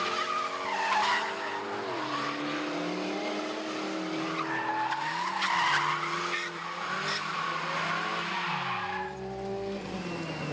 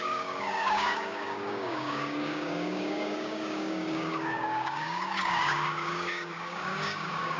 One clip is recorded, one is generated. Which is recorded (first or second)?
first